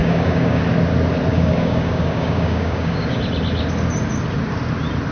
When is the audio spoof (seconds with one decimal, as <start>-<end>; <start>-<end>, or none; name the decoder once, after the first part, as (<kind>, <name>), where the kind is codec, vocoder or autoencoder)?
0.0-0.6 (codec, DAC); 1.3-3.2